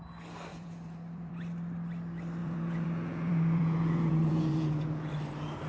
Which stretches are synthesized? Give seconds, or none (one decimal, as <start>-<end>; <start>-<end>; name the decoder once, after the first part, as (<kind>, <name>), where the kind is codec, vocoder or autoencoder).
0.5-1.3 (vocoder, Vocos); 2.4-5.1